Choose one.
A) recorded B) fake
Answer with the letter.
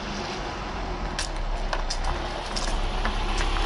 A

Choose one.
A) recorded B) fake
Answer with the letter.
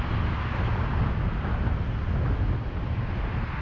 A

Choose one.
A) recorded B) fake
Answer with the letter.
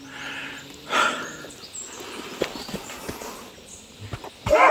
A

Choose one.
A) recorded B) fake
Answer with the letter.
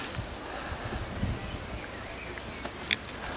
A